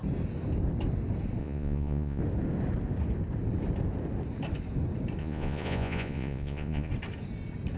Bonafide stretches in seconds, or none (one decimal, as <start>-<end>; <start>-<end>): 0.0-1.4; 2.2-5.2; 6.9-7.8